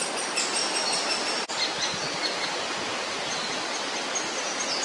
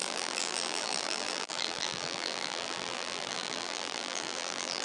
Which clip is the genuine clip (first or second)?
first